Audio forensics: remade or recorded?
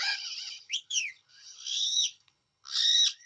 remade